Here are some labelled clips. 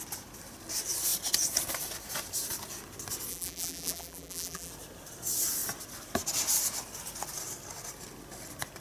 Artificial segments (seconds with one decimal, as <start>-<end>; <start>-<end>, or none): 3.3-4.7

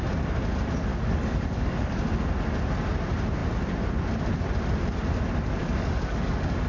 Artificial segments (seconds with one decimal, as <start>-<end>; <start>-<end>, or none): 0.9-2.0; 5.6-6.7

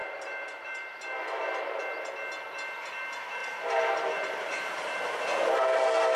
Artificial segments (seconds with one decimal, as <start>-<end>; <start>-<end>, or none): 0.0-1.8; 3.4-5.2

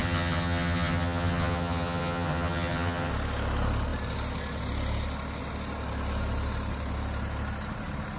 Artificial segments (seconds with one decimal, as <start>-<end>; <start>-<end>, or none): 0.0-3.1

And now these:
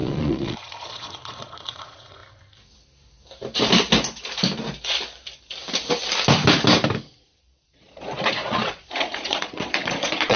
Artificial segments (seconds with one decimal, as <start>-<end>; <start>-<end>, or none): 0.0-2.2; 7.4-10.4

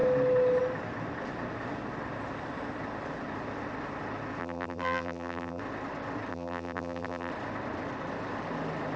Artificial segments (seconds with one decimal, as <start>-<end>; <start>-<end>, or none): 4.4-5.6; 6.3-7.3